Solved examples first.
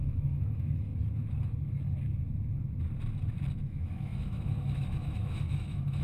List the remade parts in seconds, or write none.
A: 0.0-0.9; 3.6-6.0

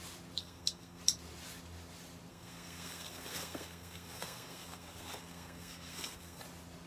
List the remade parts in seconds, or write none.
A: 0.4-1.0; 2.3-6.4

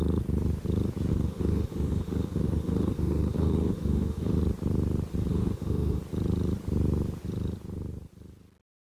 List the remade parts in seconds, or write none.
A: 1.1-4.4; 5.3-6.0

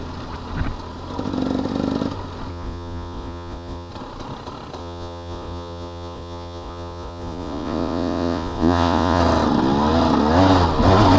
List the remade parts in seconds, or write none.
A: 2.5-3.9; 4.8-9.2

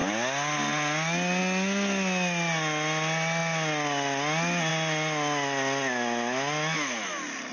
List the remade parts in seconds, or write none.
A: none

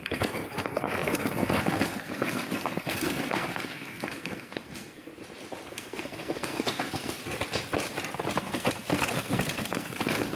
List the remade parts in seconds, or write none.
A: 0.0-5.1; 5.7-7.2; 8.4-10.4

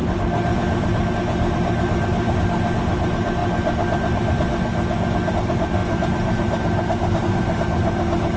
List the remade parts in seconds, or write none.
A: 0.0-3.4; 5.3-8.4